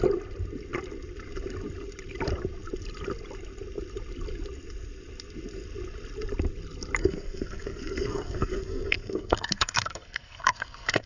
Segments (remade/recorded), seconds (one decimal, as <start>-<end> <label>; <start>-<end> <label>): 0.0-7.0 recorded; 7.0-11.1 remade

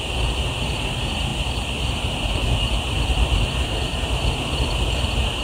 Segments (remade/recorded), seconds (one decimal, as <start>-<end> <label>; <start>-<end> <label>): 0.0-5.4 recorded

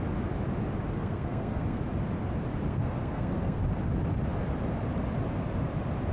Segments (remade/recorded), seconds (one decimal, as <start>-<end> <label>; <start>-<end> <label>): 0.0-1.0 recorded; 1.0-1.8 remade; 1.8-2.7 recorded; 2.7-3.6 remade; 3.6-6.1 recorded

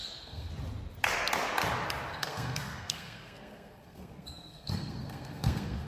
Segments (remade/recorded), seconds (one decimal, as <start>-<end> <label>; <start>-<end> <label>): 0.0-0.5 remade; 0.5-2.1 recorded; 2.1-5.9 remade

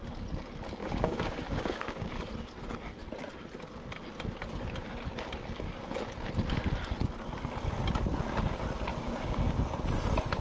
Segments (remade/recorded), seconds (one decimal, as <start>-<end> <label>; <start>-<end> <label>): 0.0-0.8 recorded; 0.8-2.1 remade; 2.1-8.9 recorded; 8.9-9.6 remade; 9.6-10.4 recorded

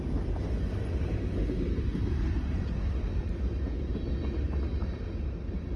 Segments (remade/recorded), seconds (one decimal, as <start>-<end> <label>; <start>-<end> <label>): 0.0-1.9 recorded; 1.9-3.2 remade; 3.2-5.8 recorded

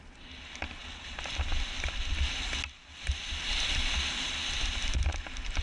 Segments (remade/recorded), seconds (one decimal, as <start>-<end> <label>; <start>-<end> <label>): 0.0-0.8 recorded; 0.8-1.5 remade; 1.5-5.6 recorded

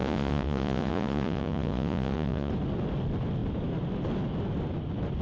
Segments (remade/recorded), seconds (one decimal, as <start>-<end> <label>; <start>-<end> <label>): 0.0-2.5 remade; 2.5-5.2 recorded